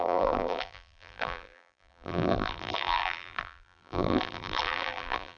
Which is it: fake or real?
fake